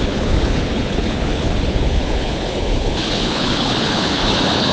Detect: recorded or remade remade